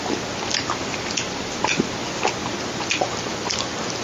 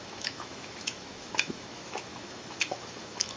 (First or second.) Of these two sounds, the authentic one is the first